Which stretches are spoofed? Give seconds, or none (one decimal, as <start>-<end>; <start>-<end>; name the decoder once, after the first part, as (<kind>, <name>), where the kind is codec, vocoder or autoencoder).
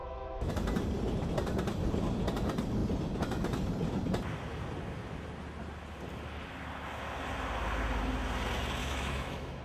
0.0-0.5 (autoencoder, DAC-VAE); 8.8-9.6